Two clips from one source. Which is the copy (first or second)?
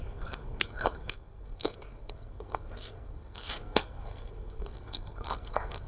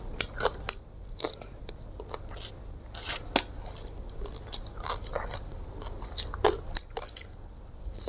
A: first